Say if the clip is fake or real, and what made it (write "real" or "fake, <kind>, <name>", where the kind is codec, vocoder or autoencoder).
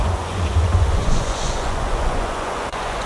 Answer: fake, vocoder, Vocos